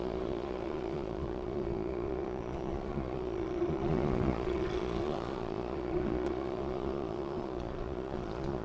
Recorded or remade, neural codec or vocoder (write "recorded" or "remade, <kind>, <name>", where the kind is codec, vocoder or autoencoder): remade, vocoder, Vocos